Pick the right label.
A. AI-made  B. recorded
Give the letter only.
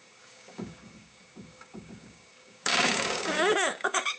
A